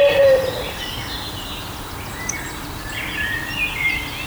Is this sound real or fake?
real